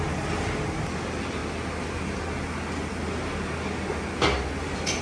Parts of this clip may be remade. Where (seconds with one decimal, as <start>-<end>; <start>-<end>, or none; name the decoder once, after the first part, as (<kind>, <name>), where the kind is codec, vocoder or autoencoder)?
none